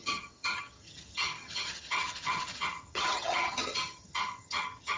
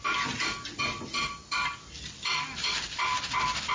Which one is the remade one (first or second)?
first